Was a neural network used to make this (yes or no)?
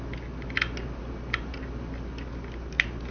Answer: no